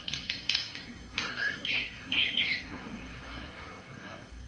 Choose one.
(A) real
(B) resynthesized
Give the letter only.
B